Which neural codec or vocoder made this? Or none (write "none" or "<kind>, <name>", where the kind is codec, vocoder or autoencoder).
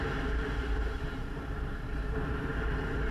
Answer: vocoder, BigVGAN v2